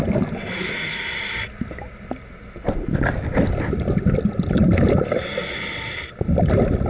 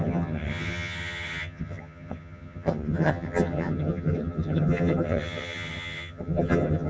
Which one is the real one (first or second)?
first